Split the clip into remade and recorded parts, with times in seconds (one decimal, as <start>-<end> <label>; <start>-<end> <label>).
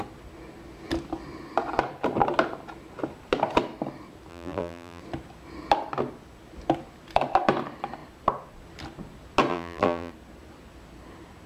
0.0-4.3 recorded; 4.3-5.0 remade; 5.0-9.5 recorded; 9.5-10.1 remade; 10.1-11.5 recorded